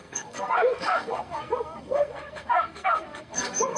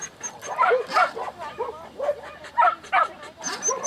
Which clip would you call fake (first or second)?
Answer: first